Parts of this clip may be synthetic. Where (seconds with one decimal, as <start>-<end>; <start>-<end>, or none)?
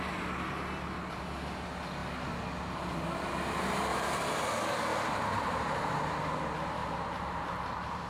3.9-4.5; 4.9-6.1